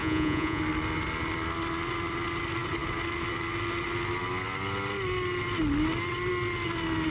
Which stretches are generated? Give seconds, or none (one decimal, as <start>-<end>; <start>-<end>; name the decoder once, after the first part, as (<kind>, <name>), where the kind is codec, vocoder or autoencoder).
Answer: 0.0-0.6 (vocoder, Vocos)